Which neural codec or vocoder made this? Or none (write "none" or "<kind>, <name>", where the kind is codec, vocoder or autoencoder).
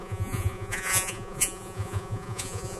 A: vocoder, Vocos